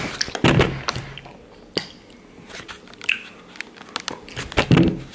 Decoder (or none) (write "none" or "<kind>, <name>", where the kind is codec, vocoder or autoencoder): none